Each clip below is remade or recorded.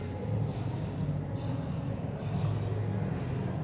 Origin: recorded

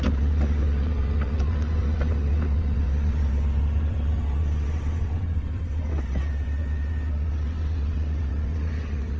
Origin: remade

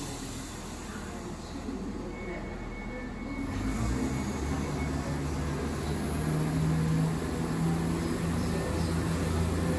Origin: recorded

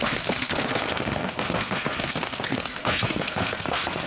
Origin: remade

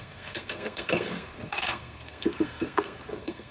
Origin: remade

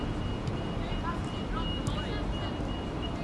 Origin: recorded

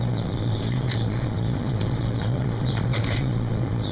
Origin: remade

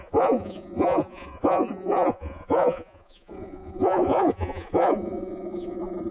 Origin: remade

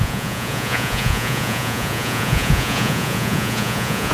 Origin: remade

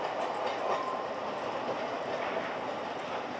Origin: recorded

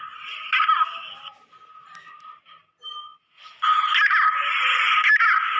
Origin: recorded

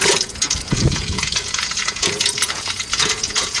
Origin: remade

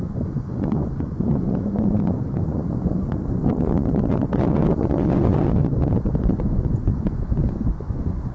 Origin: remade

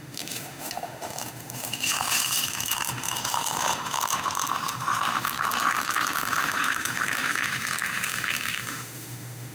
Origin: remade